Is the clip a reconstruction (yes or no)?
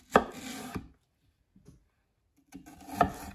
no